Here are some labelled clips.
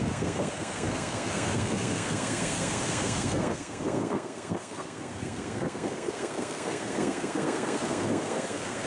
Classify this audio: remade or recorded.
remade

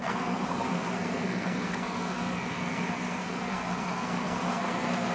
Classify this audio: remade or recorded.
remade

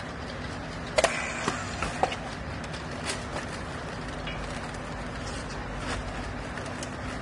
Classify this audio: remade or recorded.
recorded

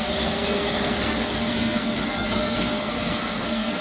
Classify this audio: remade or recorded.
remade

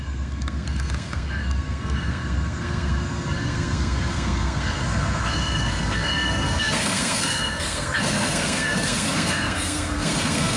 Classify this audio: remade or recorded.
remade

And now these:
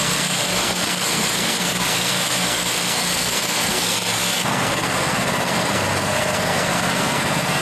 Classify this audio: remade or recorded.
remade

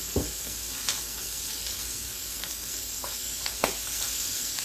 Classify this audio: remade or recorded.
remade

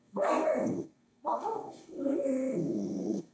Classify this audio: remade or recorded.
remade